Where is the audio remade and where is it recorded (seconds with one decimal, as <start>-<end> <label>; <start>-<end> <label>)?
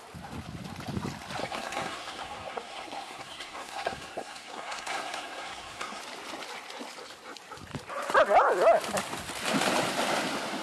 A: 0.0-1.4 recorded; 1.4-6.0 remade; 6.0-10.6 recorded